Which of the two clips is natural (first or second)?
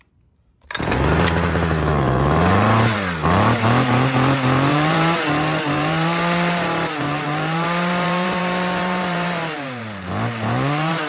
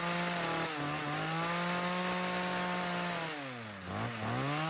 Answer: second